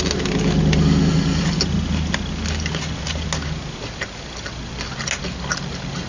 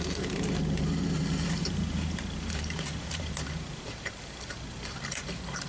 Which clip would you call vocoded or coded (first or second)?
second